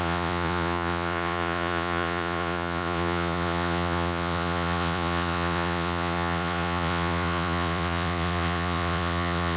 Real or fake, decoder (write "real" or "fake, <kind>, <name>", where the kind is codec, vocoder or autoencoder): fake, vocoder, Vocos